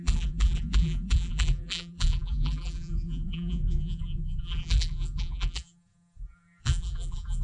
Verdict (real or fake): fake